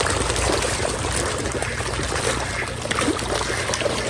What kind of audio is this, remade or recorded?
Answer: recorded